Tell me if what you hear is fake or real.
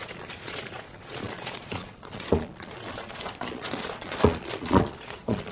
fake